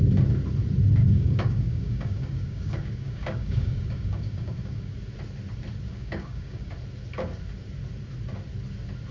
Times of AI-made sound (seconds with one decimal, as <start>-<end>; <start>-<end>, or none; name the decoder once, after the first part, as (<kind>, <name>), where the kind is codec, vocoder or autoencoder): 1.0-4.9 (codec, DAC); 5.9-6.7